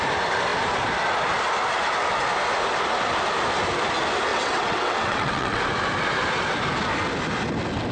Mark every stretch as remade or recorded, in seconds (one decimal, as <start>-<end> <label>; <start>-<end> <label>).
0.0-4.3 recorded; 4.3-5.6 remade; 5.6-7.9 recorded

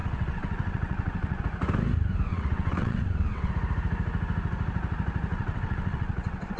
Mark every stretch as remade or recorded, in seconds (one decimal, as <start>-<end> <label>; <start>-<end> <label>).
0.0-1.4 remade; 1.4-2.3 recorded; 2.3-3.5 remade; 3.5-5.3 recorded; 5.3-6.6 remade

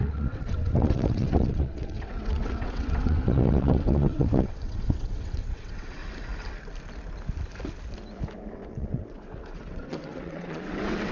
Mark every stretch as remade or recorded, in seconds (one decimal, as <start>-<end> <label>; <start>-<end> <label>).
0.0-6.0 remade; 6.0-8.5 recorded; 8.5-11.1 remade

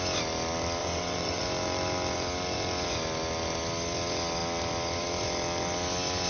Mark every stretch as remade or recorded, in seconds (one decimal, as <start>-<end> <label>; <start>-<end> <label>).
0.0-0.8 recorded; 0.8-1.4 remade; 1.4-6.3 recorded

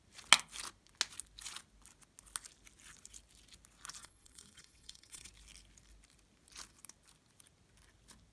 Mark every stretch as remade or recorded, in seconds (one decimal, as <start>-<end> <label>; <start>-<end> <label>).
0.0-4.0 recorded; 4.0-5.3 remade; 5.3-8.3 recorded

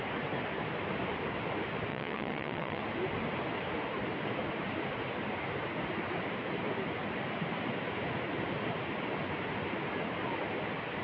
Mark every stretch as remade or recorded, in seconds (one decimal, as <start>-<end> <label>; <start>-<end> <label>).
0.0-1.9 recorded; 1.9-2.8 remade; 2.8-11.0 recorded